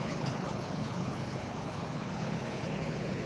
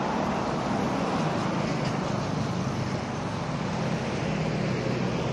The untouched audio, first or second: second